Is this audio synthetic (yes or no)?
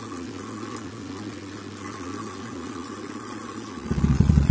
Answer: yes